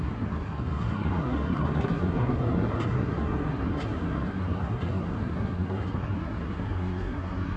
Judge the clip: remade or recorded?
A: remade